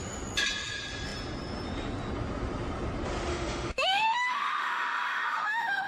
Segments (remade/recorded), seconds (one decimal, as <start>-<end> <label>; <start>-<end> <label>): 0.0-3.3 recorded; 3.3-5.9 remade